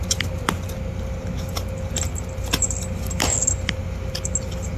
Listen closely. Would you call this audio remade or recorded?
recorded